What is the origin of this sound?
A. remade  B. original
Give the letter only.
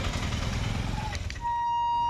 B